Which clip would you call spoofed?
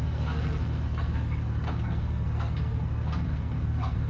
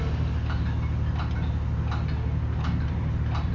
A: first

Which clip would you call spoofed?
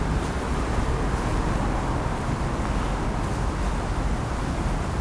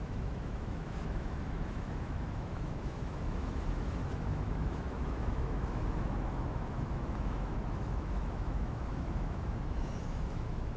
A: second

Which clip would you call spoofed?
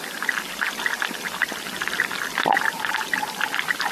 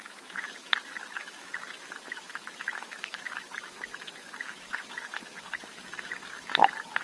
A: second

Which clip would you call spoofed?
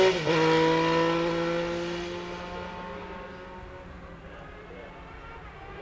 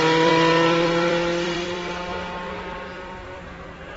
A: second